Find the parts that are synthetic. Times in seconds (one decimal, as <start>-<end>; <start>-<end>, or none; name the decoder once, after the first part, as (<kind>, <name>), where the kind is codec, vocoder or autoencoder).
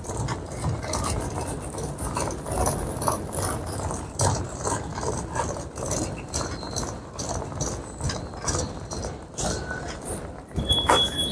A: none